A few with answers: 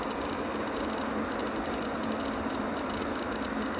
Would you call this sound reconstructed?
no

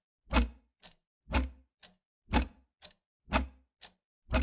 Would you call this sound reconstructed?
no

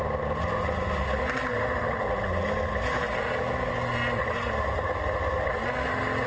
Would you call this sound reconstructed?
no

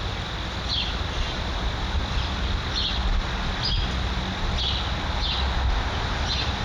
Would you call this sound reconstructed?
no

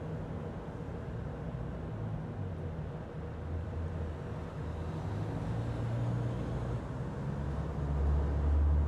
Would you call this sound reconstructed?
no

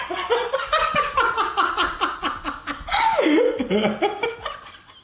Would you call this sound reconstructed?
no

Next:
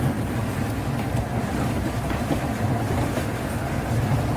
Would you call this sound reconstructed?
no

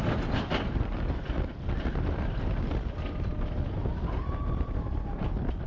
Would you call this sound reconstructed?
no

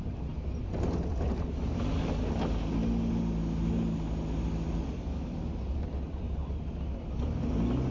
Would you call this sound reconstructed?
no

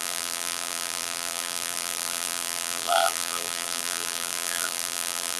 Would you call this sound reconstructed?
yes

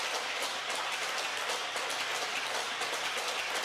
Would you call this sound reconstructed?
no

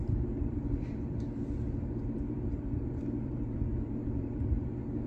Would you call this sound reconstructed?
yes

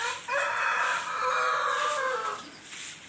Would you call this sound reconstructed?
no